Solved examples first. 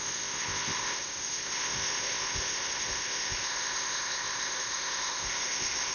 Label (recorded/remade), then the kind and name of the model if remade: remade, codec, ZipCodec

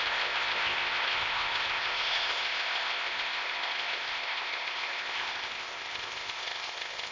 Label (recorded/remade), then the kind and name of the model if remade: remade, codec, ZipCodec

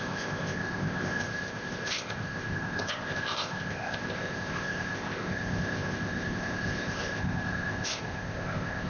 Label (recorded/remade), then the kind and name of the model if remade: remade, codec, ZipCodec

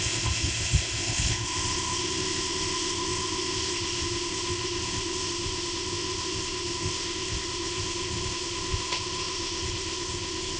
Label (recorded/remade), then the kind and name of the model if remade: remade, codec, ZipCodec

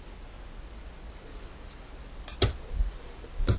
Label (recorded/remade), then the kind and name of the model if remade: recorded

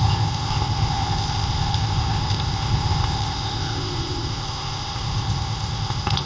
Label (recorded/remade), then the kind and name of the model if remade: remade, codec, ZipCodec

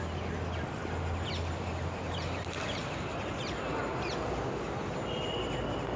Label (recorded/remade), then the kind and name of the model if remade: recorded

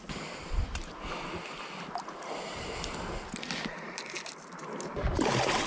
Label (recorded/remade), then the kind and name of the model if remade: recorded